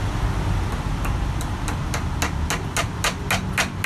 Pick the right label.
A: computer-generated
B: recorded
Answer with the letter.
B